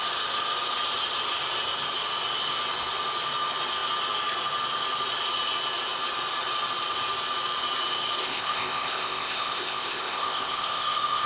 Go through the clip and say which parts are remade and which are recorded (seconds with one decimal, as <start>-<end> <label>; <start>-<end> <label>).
0.0-8.2 recorded; 8.2-11.3 remade